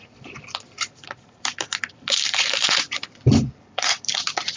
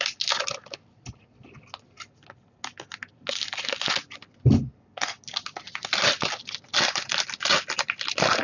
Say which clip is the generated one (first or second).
first